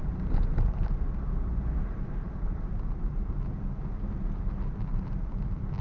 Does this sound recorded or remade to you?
remade